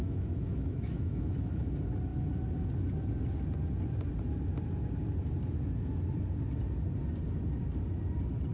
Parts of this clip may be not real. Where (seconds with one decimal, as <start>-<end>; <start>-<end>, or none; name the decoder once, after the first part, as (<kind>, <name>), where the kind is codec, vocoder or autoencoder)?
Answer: 0.0-1.7 (autoencoder, DAC-VAE)